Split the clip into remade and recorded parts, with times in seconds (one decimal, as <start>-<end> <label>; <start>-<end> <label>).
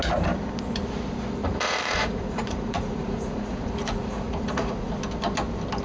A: 0.0-1.4 recorded; 1.4-4.9 remade; 4.9-5.8 recorded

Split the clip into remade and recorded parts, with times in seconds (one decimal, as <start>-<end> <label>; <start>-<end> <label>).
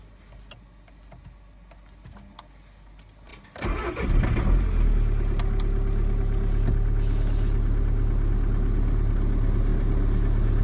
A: 0.0-10.6 recorded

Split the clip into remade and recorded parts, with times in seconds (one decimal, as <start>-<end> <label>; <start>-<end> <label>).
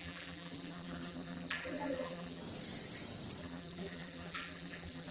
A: 0.0-2.4 remade; 2.4-3.4 recorded; 3.4-5.1 remade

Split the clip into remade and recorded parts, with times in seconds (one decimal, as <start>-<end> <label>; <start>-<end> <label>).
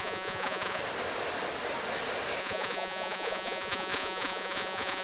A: 0.0-0.8 remade; 0.8-2.4 recorded; 2.4-5.0 remade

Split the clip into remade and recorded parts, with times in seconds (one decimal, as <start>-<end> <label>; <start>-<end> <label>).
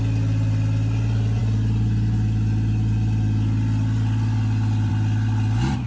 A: 0.0-5.9 recorded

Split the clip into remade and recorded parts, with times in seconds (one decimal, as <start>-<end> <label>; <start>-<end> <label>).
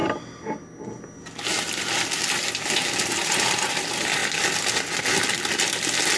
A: 0.0-6.2 recorded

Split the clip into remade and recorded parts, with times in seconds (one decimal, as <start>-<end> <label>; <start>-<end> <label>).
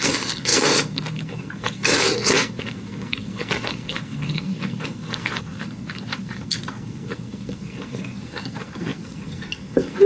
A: 0.0-10.1 remade